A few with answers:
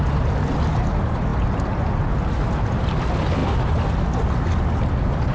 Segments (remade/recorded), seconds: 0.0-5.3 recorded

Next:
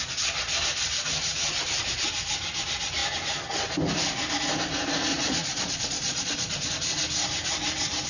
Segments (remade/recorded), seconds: 0.0-5.1 recorded; 5.1-6.7 remade; 6.7-8.1 recorded

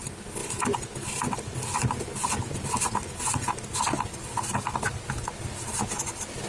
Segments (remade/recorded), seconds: 0.0-6.5 recorded

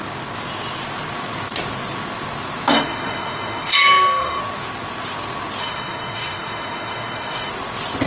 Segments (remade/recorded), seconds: 0.0-2.7 recorded; 2.7-4.4 remade; 4.4-5.6 recorded; 5.6-7.5 remade; 7.5-8.1 recorded